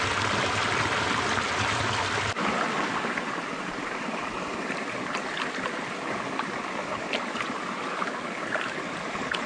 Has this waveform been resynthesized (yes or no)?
no